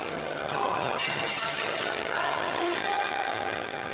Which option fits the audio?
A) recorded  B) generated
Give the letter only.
B